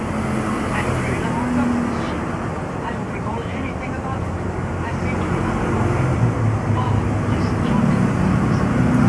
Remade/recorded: recorded